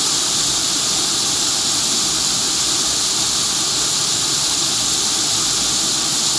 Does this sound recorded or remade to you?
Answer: recorded